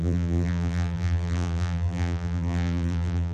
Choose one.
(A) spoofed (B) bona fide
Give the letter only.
A